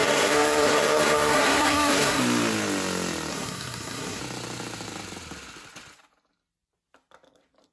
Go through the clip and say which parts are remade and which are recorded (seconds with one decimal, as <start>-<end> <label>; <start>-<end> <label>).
0.0-2.2 remade; 2.2-3.3 recorded; 3.3-4.2 remade; 4.2-7.7 recorded